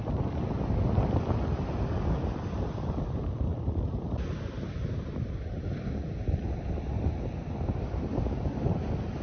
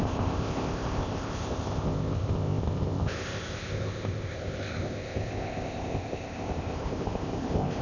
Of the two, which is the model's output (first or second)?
second